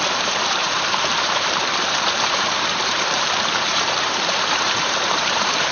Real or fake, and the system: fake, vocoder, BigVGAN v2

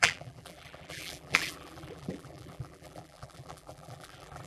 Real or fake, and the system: fake, vocoder, BigVGAN v2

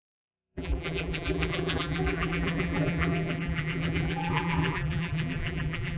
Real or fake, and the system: fake, vocoder, BigVGAN v2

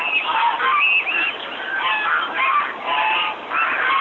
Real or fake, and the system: real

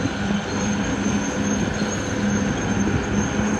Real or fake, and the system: real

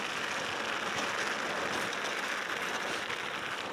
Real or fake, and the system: real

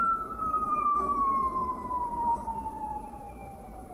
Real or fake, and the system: fake, vocoder, BigVGAN v2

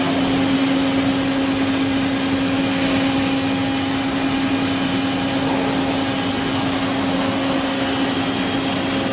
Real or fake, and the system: real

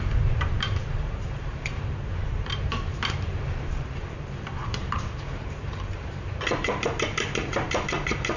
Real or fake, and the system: fake, vocoder, BigVGAN v2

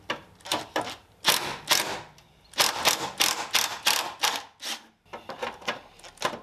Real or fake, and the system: real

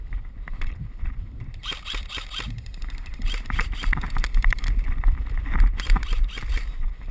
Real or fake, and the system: fake, vocoder, BigVGAN v2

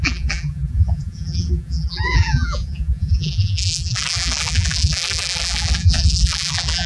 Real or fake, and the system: fake, vocoder, BigVGAN v2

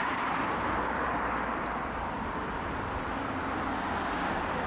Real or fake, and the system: fake, vocoder, BigVGAN v2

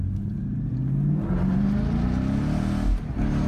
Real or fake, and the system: real